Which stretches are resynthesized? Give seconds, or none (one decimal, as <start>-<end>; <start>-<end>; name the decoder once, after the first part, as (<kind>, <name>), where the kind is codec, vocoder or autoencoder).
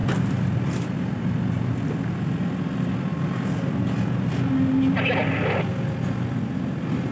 none